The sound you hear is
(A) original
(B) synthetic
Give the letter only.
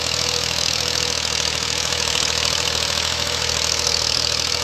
B